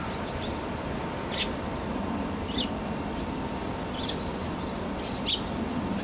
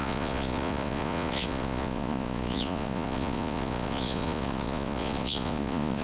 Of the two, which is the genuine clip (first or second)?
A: first